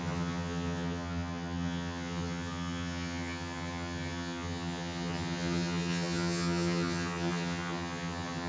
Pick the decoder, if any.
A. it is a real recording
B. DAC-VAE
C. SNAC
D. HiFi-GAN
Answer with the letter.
D